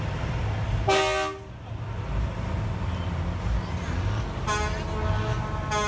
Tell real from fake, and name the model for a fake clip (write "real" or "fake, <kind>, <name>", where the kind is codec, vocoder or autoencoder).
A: real